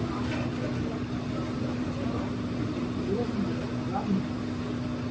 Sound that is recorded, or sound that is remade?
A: recorded